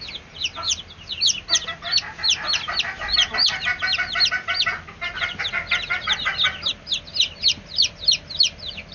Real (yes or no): yes